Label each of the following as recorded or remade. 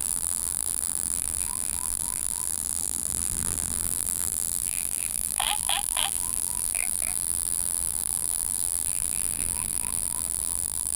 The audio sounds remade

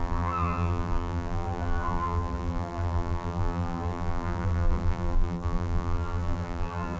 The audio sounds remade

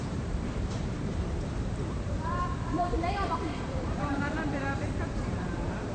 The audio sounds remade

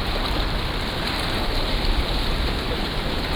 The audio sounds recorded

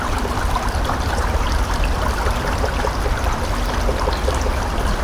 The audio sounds remade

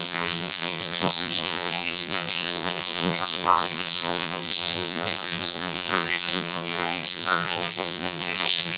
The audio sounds remade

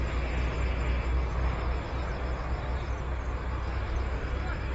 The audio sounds recorded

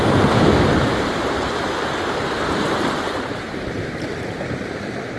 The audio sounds remade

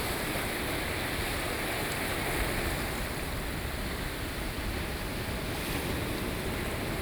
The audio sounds recorded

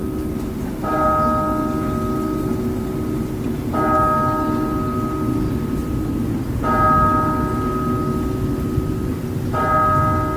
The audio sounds recorded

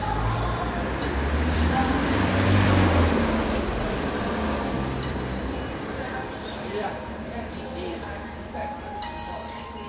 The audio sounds remade